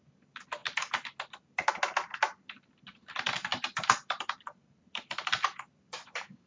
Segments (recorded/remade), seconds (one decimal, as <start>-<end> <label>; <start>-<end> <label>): 0.0-3.5 recorded; 3.5-6.5 remade